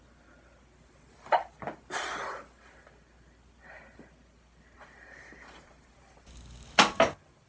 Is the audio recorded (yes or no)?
yes